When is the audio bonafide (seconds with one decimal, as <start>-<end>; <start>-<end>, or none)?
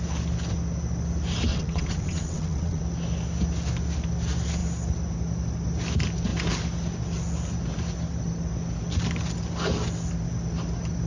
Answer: 0.0-1.5; 2.8-11.1